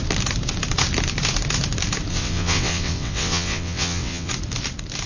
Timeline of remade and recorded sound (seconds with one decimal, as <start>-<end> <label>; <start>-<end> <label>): 0.0-2.1 recorded; 2.1-4.3 remade; 4.3-5.1 recorded